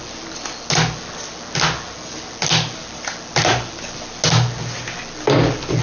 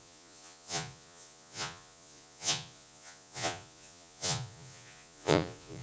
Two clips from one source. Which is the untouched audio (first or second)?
first